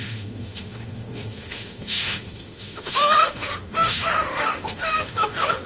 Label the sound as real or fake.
fake